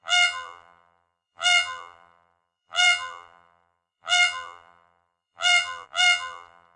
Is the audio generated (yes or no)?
yes